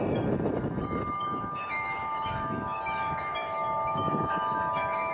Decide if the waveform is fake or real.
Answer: fake